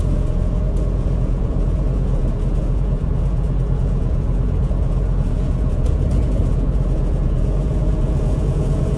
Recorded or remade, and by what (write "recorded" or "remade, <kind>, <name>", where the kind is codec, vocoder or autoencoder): remade, vocoder, Vocos